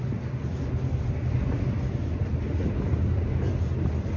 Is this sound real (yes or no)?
yes